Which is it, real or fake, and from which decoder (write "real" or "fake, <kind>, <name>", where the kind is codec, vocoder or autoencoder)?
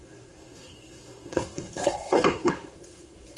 fake, codec, SNAC